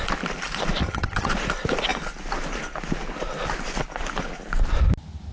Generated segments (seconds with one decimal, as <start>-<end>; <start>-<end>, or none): 0.8-1.3